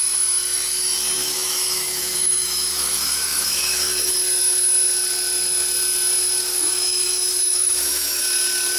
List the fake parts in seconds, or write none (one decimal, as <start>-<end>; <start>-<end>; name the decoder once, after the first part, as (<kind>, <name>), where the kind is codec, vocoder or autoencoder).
1.2-4.1 (autoencoder, DAC-VAE); 6.4-8.2